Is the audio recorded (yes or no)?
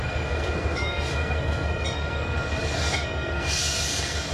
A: no